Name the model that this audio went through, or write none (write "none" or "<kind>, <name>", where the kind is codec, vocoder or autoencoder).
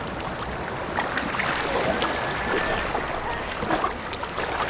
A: none